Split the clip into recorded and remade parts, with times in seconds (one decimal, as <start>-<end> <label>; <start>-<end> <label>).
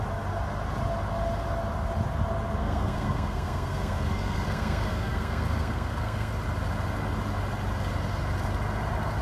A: 0.0-2.6 recorded; 2.6-6.3 remade; 6.3-9.2 recorded